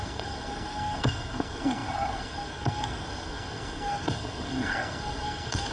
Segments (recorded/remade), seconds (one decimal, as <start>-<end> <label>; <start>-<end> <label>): 0.0-5.7 remade